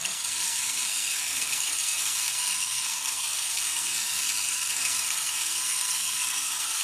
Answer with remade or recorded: remade